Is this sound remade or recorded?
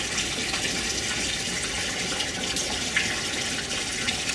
recorded